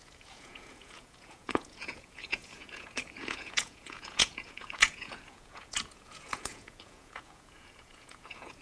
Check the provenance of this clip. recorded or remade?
remade